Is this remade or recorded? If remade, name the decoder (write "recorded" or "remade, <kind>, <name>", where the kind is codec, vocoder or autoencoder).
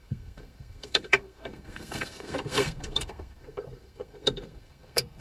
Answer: remade, codec, SNAC